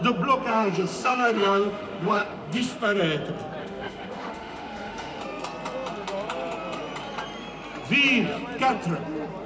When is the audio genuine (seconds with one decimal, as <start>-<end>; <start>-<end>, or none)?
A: 0.0-0.5; 3.0-3.6; 5.2-9.5